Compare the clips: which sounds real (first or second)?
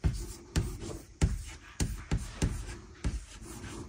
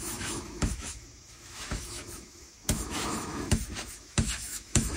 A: first